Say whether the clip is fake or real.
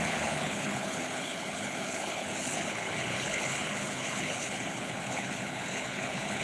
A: fake